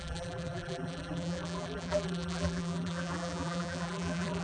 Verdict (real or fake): fake